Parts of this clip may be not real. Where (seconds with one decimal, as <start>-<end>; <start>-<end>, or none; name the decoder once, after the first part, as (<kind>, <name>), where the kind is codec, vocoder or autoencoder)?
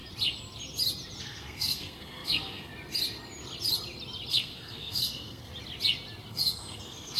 1.2-2.7 (codec, SNAC); 4.3-5.5; 6.3-7.2